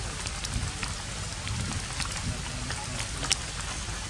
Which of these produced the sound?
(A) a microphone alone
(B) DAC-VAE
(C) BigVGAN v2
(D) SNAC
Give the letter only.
A